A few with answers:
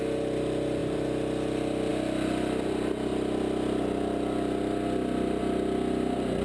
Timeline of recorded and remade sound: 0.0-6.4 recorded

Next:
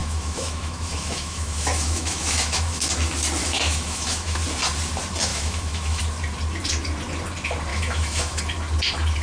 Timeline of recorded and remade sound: 0.0-2.9 remade; 2.9-3.4 recorded; 3.4-4.4 remade; 4.4-5.3 recorded; 5.3-6.0 remade; 6.0-7.7 recorded; 7.7-8.4 remade; 8.4-9.2 recorded

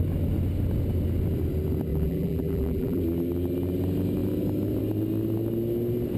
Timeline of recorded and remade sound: 0.0-1.9 recorded; 1.9-3.0 remade; 3.0-6.2 recorded

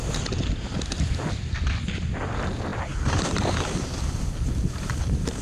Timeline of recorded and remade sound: 0.0-5.4 recorded

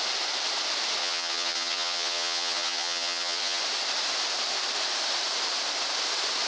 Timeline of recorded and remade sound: 0.0-1.0 recorded; 1.0-3.6 remade; 3.6-6.5 recorded